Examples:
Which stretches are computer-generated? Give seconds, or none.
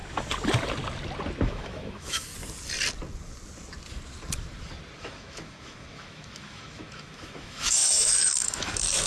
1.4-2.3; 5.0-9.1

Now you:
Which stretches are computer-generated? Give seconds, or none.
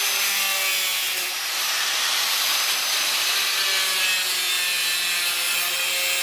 0.9-3.6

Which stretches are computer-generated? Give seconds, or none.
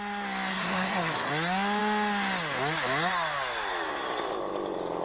0.5-1.3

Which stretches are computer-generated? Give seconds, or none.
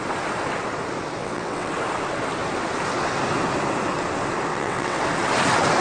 1.2-1.7; 4.5-5.0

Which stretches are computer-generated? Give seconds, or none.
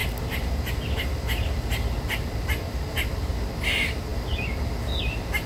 0.0-3.3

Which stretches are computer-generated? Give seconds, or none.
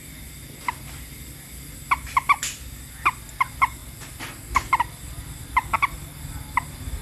none